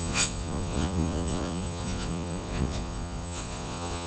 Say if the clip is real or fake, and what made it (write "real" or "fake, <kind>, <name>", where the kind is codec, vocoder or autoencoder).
fake, vocoder, Vocos